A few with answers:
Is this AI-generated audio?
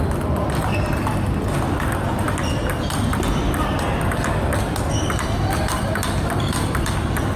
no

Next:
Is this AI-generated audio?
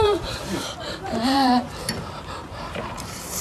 yes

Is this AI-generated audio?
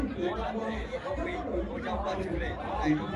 yes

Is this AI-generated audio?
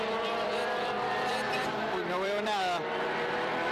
yes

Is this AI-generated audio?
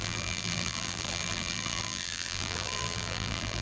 yes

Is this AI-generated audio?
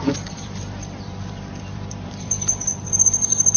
yes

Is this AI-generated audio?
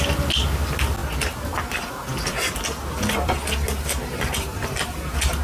no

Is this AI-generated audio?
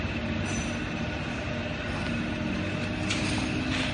no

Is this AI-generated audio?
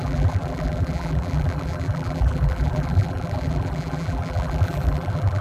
yes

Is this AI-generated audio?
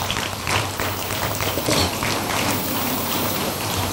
yes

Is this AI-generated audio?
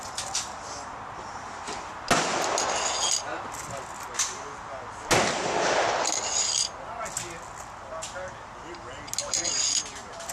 no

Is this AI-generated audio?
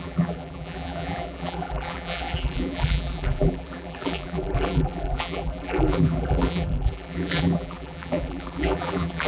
yes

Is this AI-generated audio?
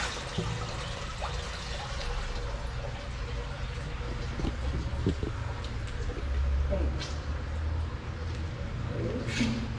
no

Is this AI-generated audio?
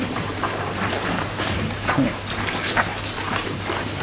yes